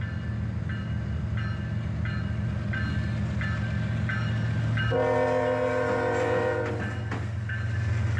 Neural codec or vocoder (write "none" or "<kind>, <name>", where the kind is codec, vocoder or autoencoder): none